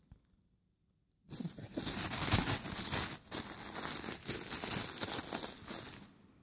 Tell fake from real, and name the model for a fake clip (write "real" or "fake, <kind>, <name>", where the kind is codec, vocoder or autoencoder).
real